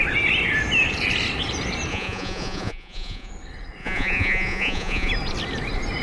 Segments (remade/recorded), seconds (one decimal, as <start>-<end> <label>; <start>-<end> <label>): 0.0-1.9 recorded; 1.9-3.3 remade; 3.3-3.8 recorded; 3.8-5.1 remade; 5.1-6.0 recorded